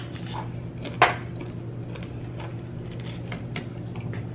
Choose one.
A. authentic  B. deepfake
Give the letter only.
A